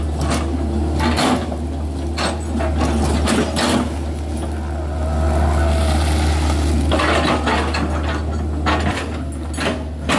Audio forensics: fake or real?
real